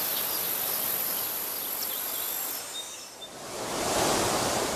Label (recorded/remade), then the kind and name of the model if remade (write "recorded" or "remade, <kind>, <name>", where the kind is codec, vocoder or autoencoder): recorded